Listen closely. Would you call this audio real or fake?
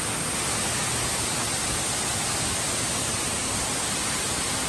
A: real